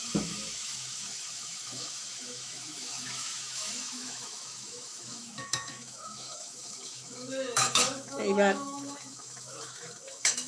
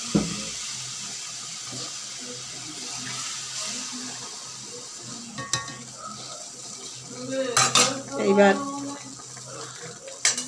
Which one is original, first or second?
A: second